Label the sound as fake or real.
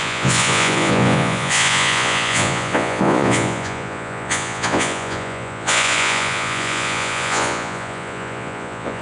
fake